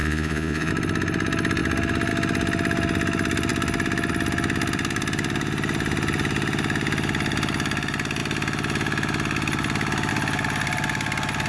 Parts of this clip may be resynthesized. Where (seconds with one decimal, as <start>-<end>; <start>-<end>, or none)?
0.0-0.7